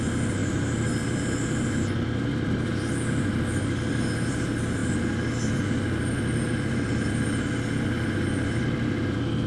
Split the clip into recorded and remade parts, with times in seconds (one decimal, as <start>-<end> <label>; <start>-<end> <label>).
0.0-9.5 recorded